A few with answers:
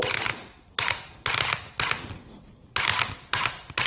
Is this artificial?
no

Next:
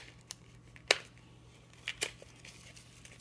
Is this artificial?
no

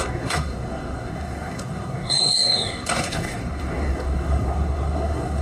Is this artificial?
yes